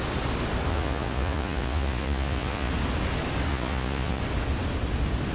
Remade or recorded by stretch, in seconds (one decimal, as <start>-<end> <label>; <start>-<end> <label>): 0.0-0.7 recorded; 0.7-2.7 remade; 2.7-3.5 recorded; 3.5-4.2 remade; 4.2-5.3 recorded